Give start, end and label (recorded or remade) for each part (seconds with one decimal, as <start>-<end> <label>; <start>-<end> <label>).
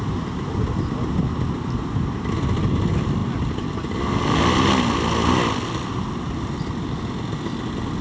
0.0-8.0 recorded